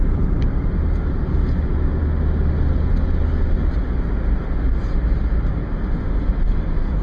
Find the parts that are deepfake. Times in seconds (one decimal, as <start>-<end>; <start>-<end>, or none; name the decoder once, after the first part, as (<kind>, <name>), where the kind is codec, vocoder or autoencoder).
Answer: none